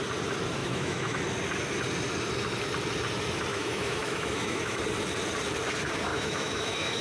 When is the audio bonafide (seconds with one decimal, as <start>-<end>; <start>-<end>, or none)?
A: 0.0-0.6; 1.2-3.5; 4.8-6.1